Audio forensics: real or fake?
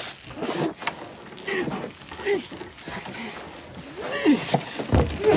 real